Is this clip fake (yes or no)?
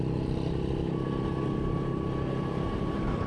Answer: no